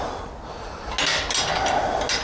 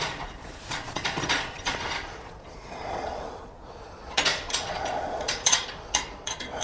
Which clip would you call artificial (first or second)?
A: second